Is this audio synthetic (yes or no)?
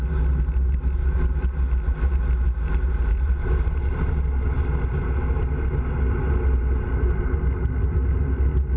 no